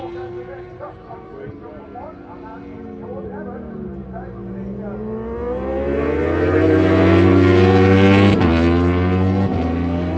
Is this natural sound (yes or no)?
yes